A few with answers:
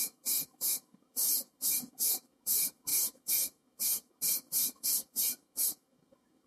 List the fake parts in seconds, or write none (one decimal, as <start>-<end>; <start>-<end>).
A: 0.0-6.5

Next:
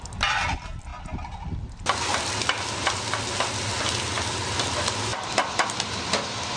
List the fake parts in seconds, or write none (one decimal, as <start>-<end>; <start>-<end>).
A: none

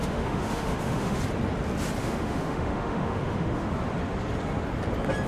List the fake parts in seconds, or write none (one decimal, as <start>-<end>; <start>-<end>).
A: 0.0-1.2; 2.0-3.7

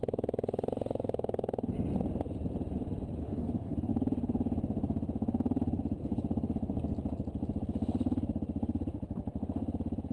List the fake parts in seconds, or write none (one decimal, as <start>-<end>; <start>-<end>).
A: 3.2-3.9

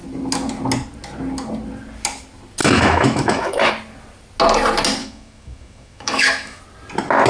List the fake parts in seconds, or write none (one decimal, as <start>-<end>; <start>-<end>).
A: 2.6-3.7; 5.0-6.6